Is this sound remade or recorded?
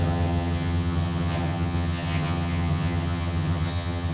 remade